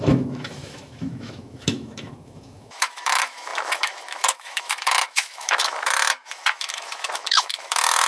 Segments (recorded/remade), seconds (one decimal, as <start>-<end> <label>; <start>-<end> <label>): 0.0-8.1 remade